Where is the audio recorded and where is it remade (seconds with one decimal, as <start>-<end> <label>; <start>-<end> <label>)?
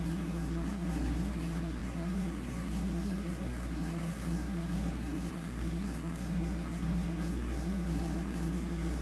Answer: 0.0-9.0 remade